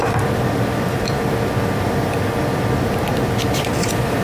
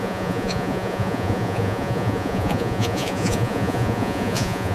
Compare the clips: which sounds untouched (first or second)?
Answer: first